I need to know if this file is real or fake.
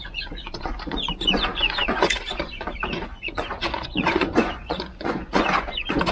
fake